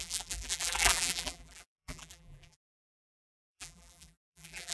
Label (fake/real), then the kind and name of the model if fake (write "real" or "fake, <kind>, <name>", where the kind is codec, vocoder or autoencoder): fake, vocoder, BigVGAN v2